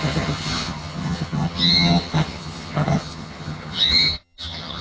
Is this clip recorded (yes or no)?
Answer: no